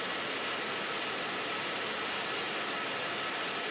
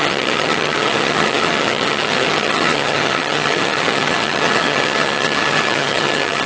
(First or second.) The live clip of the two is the first